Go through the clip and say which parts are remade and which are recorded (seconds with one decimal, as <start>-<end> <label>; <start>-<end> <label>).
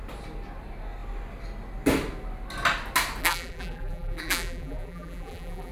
0.0-3.2 recorded; 3.2-5.7 remade